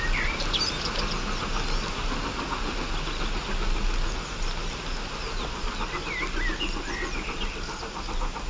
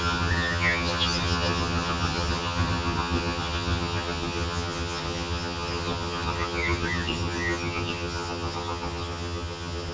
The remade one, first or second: second